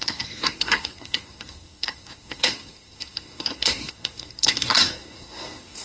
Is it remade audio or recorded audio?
remade